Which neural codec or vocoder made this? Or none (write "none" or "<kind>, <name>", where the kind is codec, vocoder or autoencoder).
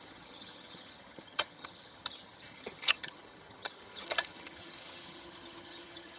vocoder, HiFi-GAN